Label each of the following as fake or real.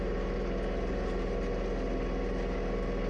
real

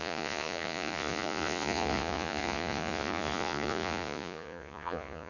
fake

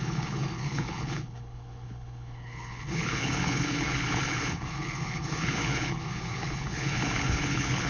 fake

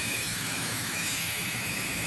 fake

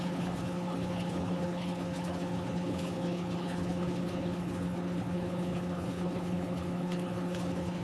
fake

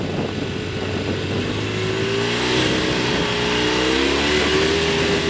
real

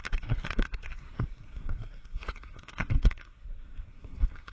fake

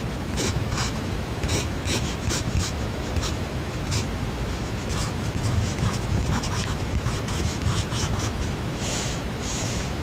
fake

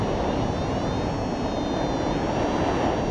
real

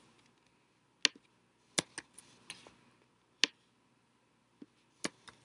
real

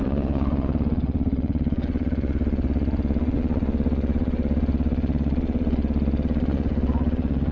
fake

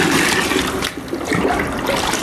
real